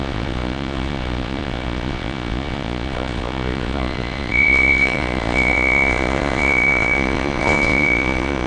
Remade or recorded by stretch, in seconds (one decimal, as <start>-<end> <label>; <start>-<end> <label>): 0.0-8.5 remade